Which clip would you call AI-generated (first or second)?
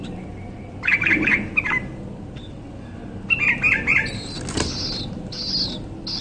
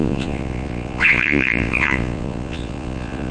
second